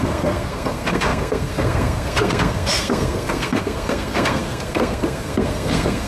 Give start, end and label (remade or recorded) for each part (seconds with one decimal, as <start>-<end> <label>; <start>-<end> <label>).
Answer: 0.0-6.1 remade